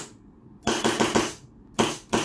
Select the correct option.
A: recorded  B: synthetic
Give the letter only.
A